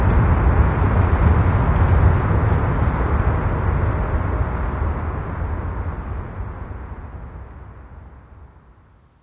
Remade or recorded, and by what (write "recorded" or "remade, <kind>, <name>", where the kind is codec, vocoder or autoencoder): recorded